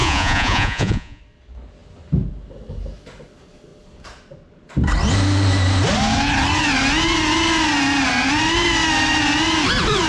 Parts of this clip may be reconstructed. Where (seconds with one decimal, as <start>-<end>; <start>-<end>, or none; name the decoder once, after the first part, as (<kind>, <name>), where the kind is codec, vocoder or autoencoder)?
0.0-1.2 (vocoder, Vocos)

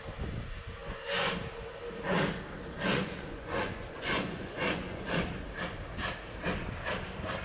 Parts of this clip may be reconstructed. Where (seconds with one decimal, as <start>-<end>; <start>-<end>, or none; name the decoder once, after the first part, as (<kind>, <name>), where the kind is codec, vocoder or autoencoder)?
0.8-1.3 (vocoder, Vocos); 2.9-5.3

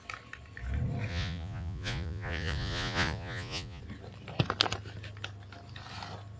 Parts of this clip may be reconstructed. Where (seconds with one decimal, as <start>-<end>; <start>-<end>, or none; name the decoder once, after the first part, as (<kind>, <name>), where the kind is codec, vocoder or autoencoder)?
1.1-3.8 (vocoder, Vocos)

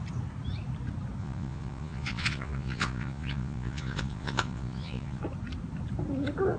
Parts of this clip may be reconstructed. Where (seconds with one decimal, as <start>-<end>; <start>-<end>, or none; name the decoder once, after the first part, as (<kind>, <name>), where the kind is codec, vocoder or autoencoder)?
1.2-5.2 (vocoder, Vocos)

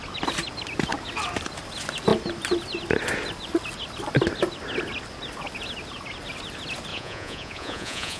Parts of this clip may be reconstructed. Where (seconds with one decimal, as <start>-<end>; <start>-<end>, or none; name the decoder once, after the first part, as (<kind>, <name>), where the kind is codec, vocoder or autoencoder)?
6.9-8.2 (vocoder, Vocos)

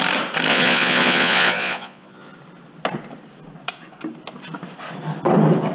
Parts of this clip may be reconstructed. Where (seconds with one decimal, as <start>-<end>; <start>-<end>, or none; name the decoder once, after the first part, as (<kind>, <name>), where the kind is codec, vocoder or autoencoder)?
0.5-2.3 (vocoder, Vocos)

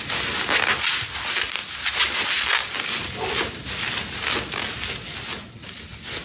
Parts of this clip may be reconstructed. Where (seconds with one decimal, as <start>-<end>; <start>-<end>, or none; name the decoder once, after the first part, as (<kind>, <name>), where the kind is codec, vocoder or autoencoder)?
none

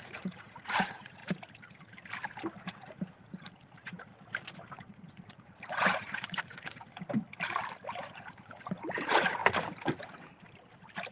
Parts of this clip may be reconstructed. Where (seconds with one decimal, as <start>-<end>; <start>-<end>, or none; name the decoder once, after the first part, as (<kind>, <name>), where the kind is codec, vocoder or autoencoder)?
0.0-1.2 (vocoder, Vocos); 2.6-4.1; 4.7-6.9; 8.0-9.4